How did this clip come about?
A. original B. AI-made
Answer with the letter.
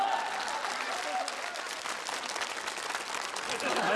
A